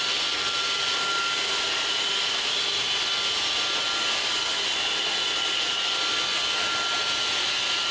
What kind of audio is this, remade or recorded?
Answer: recorded